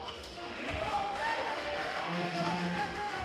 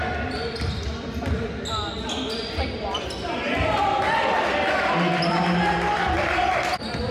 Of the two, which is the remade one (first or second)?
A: first